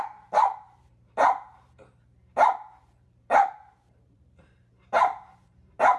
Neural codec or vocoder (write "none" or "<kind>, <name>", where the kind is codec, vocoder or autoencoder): vocoder, BigVGAN v2